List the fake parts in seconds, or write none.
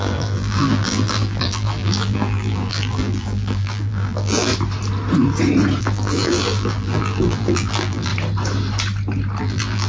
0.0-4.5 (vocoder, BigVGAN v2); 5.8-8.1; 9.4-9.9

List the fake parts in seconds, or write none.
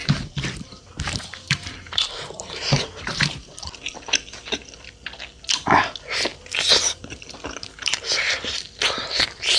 0.0-3.6 (vocoder, BigVGAN v2); 6.3-9.6